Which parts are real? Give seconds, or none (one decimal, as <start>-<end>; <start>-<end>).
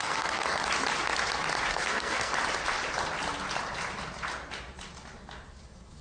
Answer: 0.6-1.7; 2.3-6.0